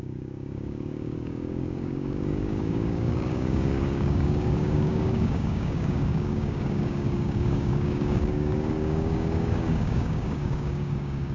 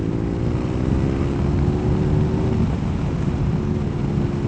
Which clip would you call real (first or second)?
second